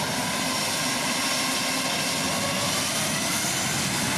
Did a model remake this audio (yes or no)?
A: no